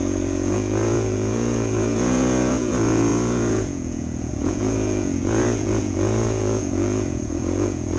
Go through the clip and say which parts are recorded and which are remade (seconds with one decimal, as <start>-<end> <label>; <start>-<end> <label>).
0.0-8.0 remade